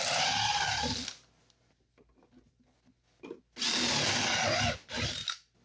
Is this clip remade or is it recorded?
recorded